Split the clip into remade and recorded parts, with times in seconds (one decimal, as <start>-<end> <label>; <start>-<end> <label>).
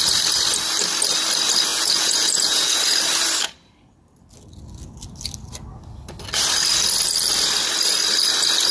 0.0-1.7 recorded; 1.7-2.8 remade; 2.8-8.7 recorded